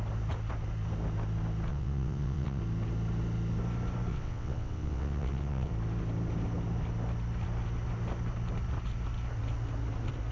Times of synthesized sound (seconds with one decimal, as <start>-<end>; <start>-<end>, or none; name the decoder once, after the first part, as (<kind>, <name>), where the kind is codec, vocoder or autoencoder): 1.7-2.6 (vocoder, WaveNeXt); 4.1-5.7